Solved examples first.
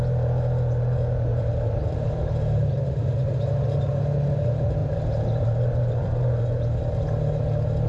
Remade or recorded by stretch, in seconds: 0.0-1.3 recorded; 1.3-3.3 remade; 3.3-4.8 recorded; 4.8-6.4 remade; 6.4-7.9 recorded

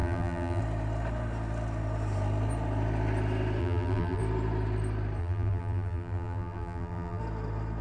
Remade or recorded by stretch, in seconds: 0.0-0.6 remade; 0.6-3.6 recorded; 3.6-4.2 remade; 4.2-5.2 recorded; 5.2-7.2 remade; 7.2-7.8 recorded

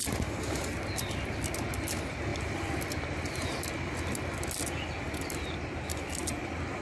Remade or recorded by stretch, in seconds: 0.0-6.2 recorded; 6.2-6.8 remade

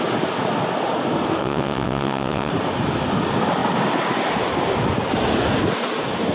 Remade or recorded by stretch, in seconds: 0.0-1.4 recorded; 1.4-2.5 remade; 2.5-6.3 recorded

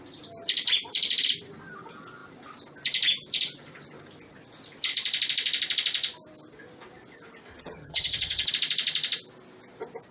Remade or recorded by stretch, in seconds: 0.0-7.5 recorded; 7.5-8.5 remade; 8.5-10.1 recorded

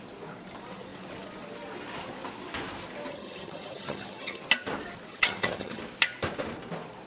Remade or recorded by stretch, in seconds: 0.0-3.1 recorded; 3.1-4.4 remade; 4.4-5.1 recorded; 5.1-5.8 remade; 5.8-7.1 recorded